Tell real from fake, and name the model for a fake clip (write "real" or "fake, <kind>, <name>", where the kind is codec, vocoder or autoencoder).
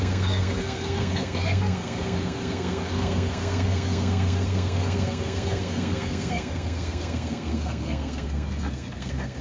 fake, codec, SNAC